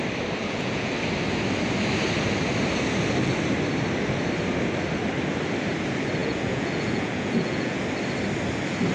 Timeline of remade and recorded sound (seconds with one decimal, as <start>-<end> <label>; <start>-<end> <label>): 0.0-0.4 recorded; 0.4-0.9 remade; 0.9-6.2 recorded; 6.2-7.8 remade; 7.8-8.9 recorded